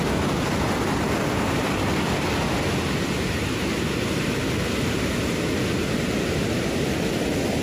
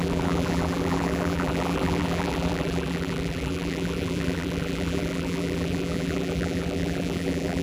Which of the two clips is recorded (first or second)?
first